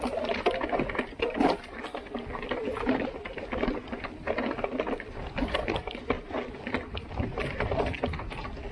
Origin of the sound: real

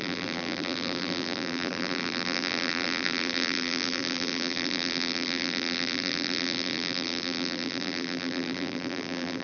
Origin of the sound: fake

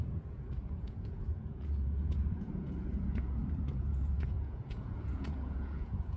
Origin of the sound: fake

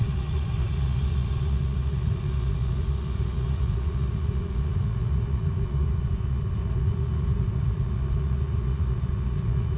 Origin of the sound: fake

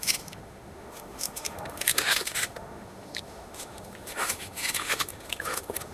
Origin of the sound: fake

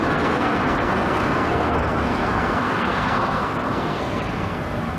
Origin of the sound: fake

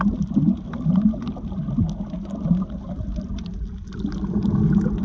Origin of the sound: real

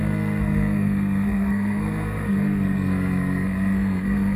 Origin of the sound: fake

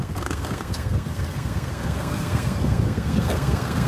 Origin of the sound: fake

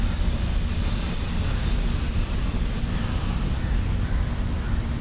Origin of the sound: real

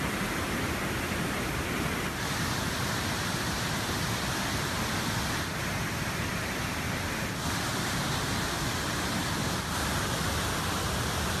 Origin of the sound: real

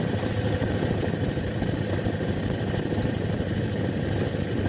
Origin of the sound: real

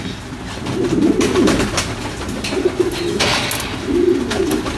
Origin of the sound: real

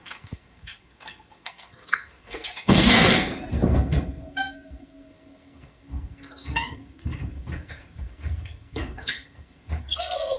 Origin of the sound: fake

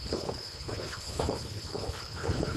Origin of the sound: fake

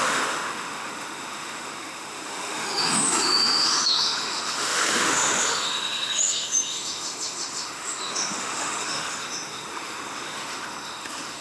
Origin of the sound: fake